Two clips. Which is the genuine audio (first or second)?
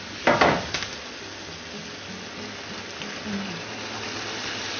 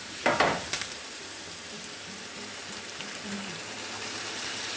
first